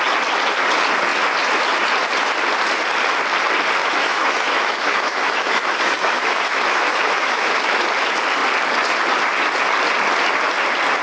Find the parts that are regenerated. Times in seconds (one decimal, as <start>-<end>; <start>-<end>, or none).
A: 3.8-7.8